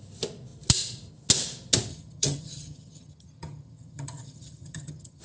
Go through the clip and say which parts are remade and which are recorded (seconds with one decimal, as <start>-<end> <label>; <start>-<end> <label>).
0.0-1.9 recorded; 1.9-5.2 remade